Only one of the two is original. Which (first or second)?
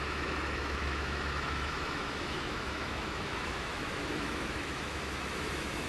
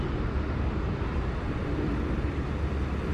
second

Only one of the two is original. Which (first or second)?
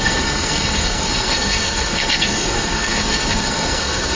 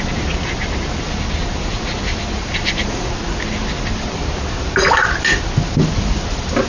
second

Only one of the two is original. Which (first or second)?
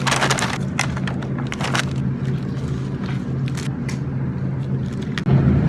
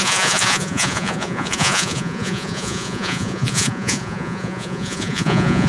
first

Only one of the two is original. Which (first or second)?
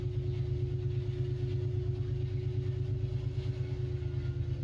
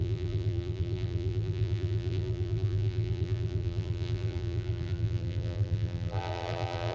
first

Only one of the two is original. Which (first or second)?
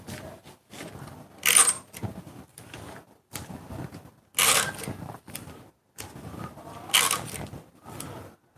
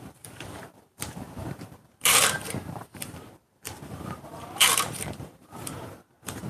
first